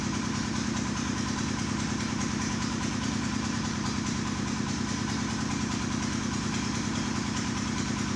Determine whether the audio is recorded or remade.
remade